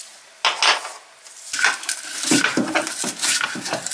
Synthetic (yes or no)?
no